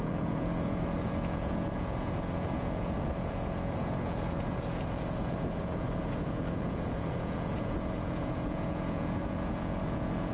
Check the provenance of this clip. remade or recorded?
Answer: remade